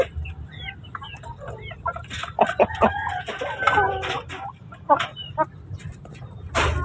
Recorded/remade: recorded